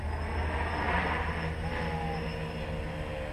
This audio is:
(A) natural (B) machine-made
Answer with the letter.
A